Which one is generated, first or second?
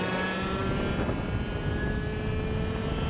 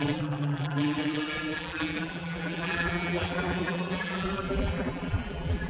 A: second